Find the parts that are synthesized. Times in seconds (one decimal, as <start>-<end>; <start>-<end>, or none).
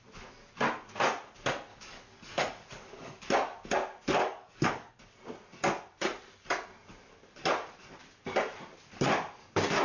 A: 1.7-3.3; 4.2-4.9